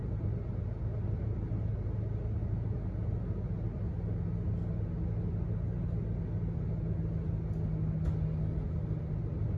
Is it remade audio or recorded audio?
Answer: recorded